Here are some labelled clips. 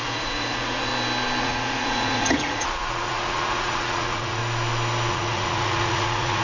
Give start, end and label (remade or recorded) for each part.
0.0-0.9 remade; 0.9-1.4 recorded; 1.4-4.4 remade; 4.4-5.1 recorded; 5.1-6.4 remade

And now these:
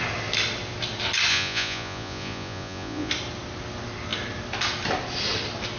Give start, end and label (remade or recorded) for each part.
0.0-1.3 recorded; 1.3-3.1 remade; 3.1-5.8 recorded

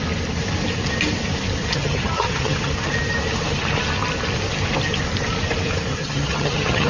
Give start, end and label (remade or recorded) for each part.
0.0-1.7 recorded; 1.7-2.7 remade; 2.7-5.9 recorded; 5.9-6.9 remade

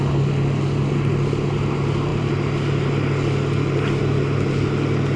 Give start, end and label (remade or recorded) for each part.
0.0-5.2 recorded

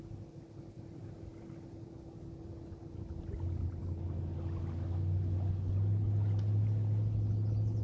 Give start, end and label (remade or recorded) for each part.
0.0-7.8 recorded

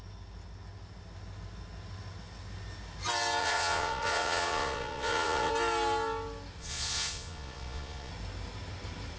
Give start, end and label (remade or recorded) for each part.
0.0-3.4 recorded; 3.4-5.5 remade; 5.5-6.6 recorded; 6.6-8.1 remade; 8.1-9.2 recorded

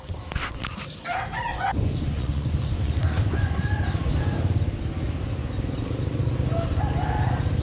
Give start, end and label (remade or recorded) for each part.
0.0-1.5 recorded; 1.5-3.6 remade; 3.6-7.6 recorded

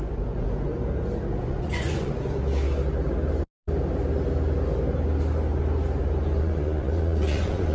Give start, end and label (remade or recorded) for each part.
0.0-0.7 remade; 0.7-1.4 recorded; 1.4-2.1 remade; 2.1-6.4 recorded; 6.4-7.7 remade